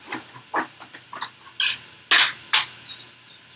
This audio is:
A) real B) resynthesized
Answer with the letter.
A